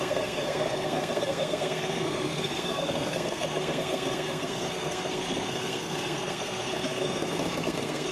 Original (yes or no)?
no